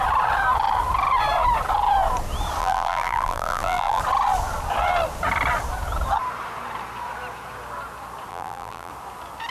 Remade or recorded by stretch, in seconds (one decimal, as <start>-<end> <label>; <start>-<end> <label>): 0.0-2.6 recorded; 2.6-4.0 remade; 4.0-8.3 recorded; 8.3-8.9 remade; 8.9-9.5 recorded